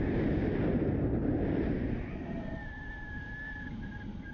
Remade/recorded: recorded